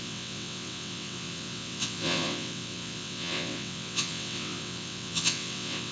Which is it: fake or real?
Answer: fake